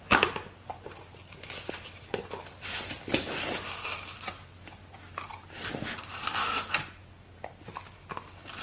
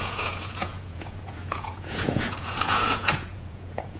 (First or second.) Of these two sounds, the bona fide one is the first